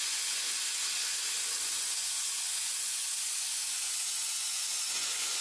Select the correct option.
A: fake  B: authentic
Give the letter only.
A